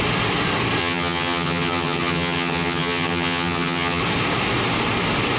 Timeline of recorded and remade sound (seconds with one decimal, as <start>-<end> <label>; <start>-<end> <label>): 0.0-0.8 recorded; 0.8-4.0 remade; 4.0-5.4 recorded